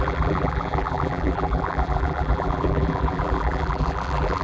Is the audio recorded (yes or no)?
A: no